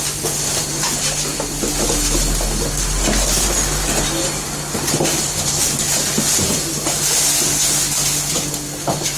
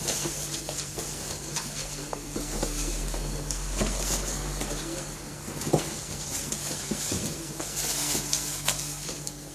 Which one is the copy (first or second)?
second